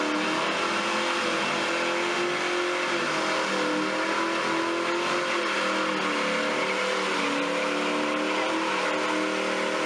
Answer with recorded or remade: recorded